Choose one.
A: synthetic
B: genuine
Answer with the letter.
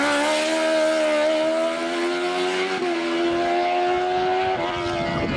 B